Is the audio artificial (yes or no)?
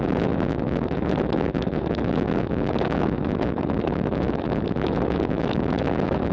yes